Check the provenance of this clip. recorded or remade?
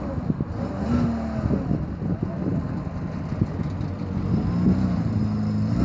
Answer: recorded